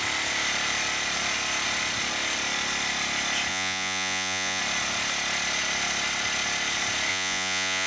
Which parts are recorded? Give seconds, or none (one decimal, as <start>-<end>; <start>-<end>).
0.0-3.5; 4.6-7.1